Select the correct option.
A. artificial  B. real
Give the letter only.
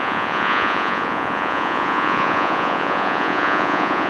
A